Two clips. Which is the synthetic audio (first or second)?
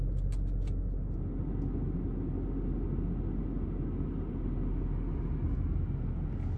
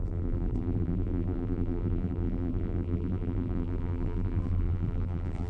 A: second